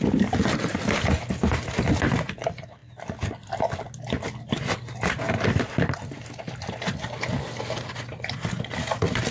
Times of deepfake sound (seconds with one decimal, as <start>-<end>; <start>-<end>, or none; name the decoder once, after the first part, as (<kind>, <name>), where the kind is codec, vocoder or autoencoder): 0.0-0.5 (vocoder, BigVGAN v2)